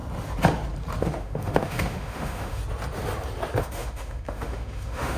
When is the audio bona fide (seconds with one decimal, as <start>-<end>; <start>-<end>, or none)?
0.0-1.0; 2.6-3.6